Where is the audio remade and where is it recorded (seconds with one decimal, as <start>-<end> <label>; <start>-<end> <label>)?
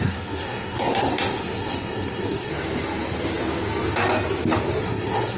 0.0-2.5 remade; 2.5-4.8 recorded; 4.8-5.4 remade